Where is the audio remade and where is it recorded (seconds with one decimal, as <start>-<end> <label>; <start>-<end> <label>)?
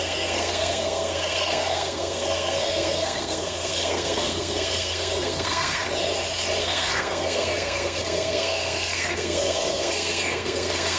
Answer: 0.0-5.8 remade; 5.8-6.6 recorded; 6.6-11.0 remade